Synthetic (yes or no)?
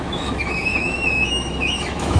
yes